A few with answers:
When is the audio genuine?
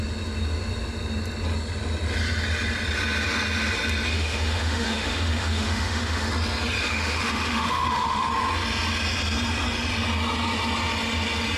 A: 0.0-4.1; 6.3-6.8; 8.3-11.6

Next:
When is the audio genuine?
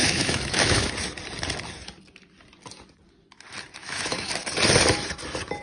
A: 0.9-3.8; 4.3-5.6